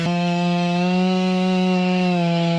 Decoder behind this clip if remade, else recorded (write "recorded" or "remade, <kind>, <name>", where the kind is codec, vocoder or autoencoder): remade, codec, DAC